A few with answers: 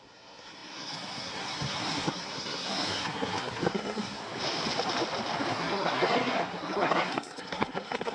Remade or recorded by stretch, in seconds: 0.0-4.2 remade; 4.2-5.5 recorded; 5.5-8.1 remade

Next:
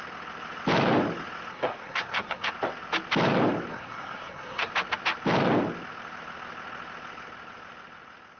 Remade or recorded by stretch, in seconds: 0.0-1.5 recorded; 1.5-2.5 remade; 2.5-3.7 recorded; 3.7-4.7 remade; 4.7-8.4 recorded

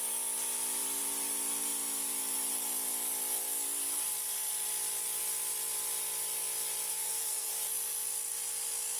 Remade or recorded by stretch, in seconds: 0.0-6.9 recorded; 6.9-7.5 remade; 7.5-9.0 recorded

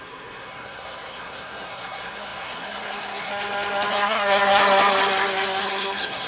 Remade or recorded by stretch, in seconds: 0.0-3.3 remade; 3.3-3.9 recorded; 3.9-4.6 remade; 4.6-5.6 recorded; 5.6-6.3 remade

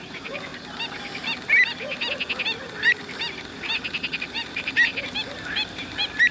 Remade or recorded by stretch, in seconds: 0.0-0.5 remade; 0.5-4.3 recorded; 4.3-4.9 remade; 4.9-6.3 recorded

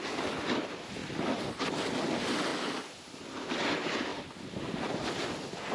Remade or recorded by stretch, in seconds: 0.0-2.5 recorded; 2.5-3.3 remade; 3.3-4.1 recorded; 4.1-5.2 remade; 5.2-5.7 recorded